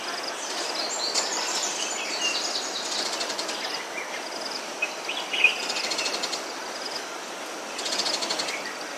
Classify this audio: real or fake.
fake